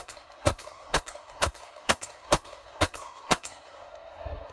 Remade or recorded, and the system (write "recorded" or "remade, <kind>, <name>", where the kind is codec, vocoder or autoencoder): remade, codec, SNAC